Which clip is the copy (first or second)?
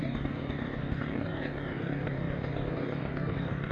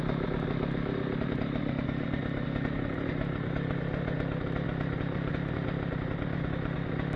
first